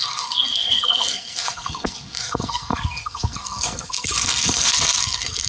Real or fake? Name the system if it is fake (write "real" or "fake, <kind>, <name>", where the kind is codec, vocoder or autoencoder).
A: fake, codec, SNAC